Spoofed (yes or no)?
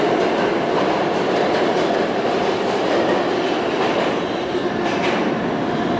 no